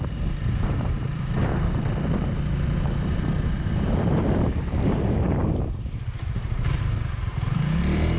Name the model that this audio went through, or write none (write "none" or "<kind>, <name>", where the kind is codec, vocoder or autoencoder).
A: vocoder, BigVGAN v2